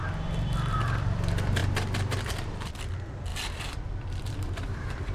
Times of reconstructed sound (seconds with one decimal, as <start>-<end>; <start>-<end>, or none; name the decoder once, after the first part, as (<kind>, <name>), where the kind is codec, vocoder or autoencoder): 0.0-5.1 (vocoder, BigVGAN v2)